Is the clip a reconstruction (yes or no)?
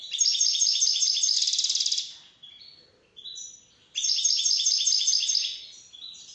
no